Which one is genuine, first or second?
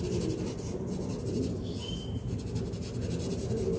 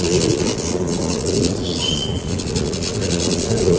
first